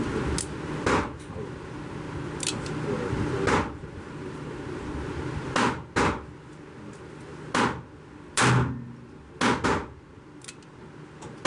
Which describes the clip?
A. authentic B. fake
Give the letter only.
A